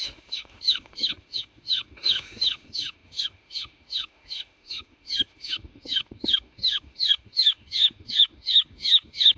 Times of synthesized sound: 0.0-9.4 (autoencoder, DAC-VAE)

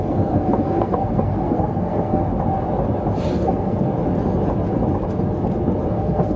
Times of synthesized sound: 0.0-2.2 (codec, SNAC); 3.2-3.9; 5.9-6.4

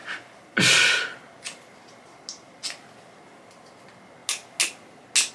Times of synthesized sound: none

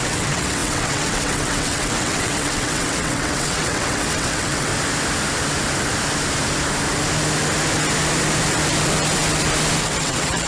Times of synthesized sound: 0.0-4.7 (vocoder, WaveNeXt); 9.8-10.5

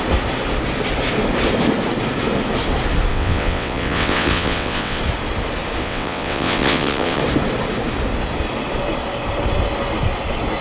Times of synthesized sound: 3.1-5.0 (vocoder, WaveNeXt); 5.8-7.2

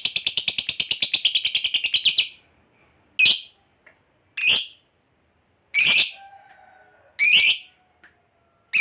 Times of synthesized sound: 4.4-6.5 (vocoder, BigVGAN v2)

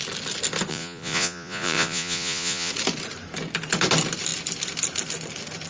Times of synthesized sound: 0.7-2.7 (vocoder, Vocos)